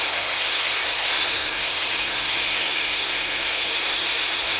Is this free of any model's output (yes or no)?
no